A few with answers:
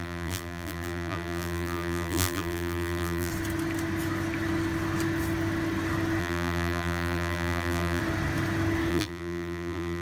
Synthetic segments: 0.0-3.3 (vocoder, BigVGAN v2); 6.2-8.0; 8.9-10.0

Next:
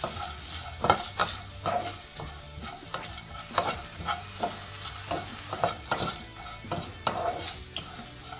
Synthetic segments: 5.3-6.2 (vocoder, BigVGAN v2)

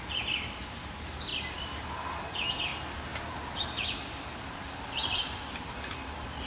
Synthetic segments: none

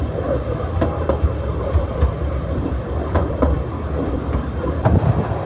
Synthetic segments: 1.5-4.4 (vocoder, BigVGAN v2)

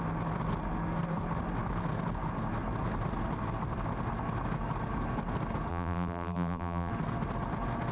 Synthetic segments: 5.7-6.9 (vocoder, BigVGAN v2)

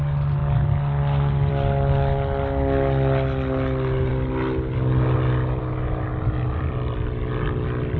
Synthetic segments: none